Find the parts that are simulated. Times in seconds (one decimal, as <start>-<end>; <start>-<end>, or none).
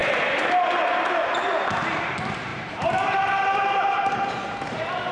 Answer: 0.0-0.6; 2.5-5.1